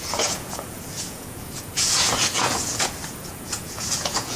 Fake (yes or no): yes